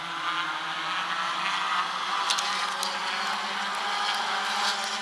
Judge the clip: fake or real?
real